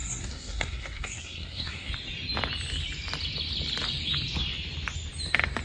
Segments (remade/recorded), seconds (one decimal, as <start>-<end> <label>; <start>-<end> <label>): 0.0-1.9 remade; 1.9-5.6 recorded